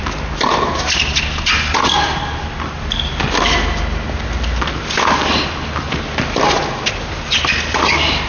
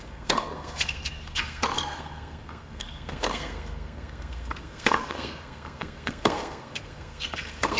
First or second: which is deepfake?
second